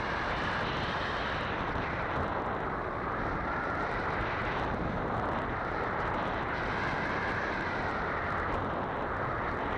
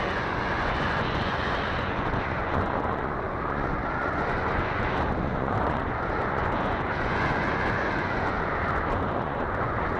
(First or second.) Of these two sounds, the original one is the first